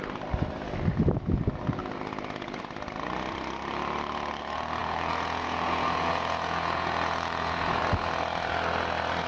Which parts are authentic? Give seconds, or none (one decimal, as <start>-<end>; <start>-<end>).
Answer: 0.0-4.8; 7.8-9.3